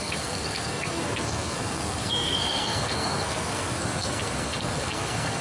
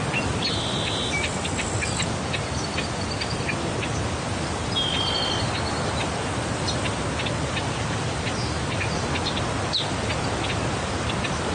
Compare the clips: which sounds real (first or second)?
second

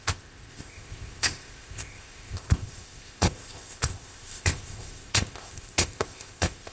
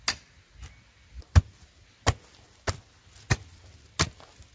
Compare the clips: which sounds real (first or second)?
second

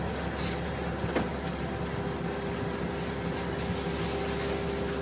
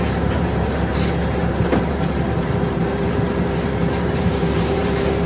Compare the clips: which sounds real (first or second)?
first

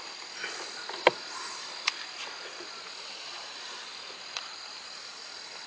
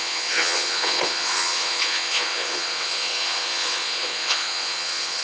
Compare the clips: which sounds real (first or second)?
first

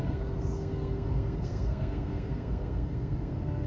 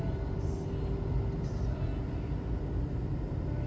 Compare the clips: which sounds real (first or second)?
second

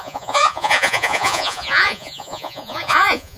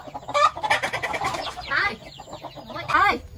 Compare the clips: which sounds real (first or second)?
second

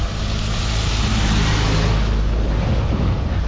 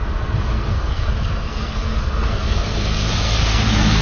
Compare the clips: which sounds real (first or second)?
first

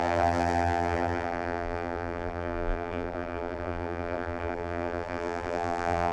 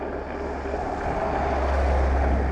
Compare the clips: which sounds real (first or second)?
second